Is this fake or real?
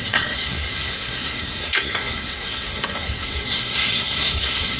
fake